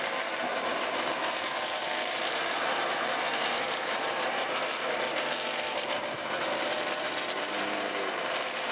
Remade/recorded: remade